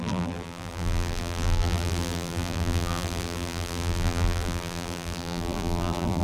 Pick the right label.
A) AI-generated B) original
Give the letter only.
A